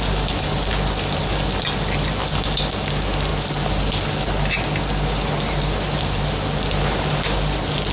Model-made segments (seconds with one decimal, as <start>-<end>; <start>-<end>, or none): none